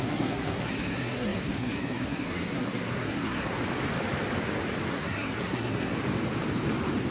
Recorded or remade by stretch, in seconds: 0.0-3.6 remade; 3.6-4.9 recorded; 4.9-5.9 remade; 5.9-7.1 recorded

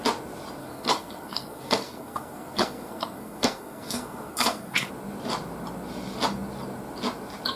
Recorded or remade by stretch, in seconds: 0.0-0.6 recorded; 0.6-4.9 remade; 4.9-7.6 recorded

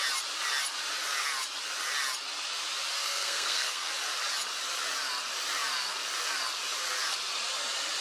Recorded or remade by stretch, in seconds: 0.0-3.0 recorded; 3.0-3.9 remade; 3.9-8.0 recorded

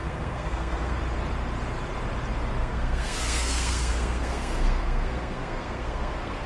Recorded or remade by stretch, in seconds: 0.0-1.0 remade; 1.0-2.6 recorded; 2.6-6.5 remade

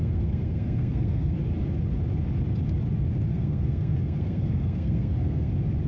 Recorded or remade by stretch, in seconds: 0.0-1.4 remade; 1.4-3.3 recorded; 3.3-5.5 remade; 5.5-5.9 recorded

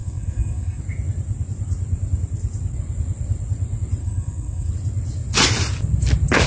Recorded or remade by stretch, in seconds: 0.0-0.8 remade; 0.8-4.0 recorded; 4.0-4.7 remade; 4.7-6.5 recorded

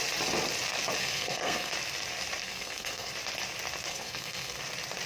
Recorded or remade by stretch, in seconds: 0.0-1.0 recorded; 1.0-1.7 remade; 1.7-2.4 recorded; 2.4-3.1 remade; 3.1-3.9 recorded; 3.9-4.6 remade; 4.6-5.1 recorded

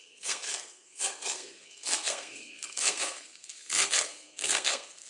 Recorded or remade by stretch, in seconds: 0.0-5.1 remade